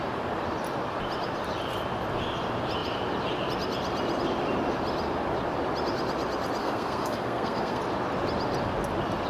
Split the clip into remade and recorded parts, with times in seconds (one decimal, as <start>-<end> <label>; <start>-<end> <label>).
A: 0.0-6.6 recorded; 6.6-7.8 remade; 7.8-9.3 recorded